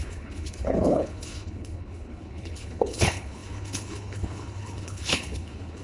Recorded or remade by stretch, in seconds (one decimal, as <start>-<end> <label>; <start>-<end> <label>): 0.0-5.8 remade